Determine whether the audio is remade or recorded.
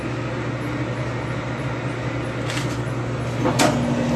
recorded